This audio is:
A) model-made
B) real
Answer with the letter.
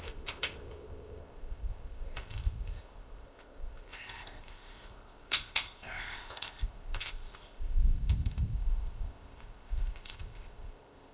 A